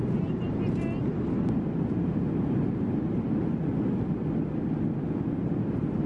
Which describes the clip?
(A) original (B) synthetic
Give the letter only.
A